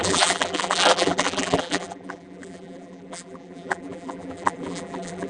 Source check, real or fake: fake